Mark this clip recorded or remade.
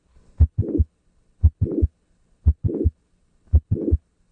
remade